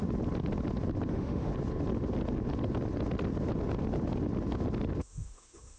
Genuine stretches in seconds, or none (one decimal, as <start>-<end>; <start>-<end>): 0.0-1.1; 1.5-5.0